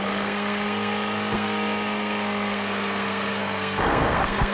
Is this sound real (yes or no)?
no